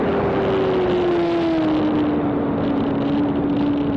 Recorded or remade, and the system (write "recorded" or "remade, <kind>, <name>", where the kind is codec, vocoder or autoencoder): recorded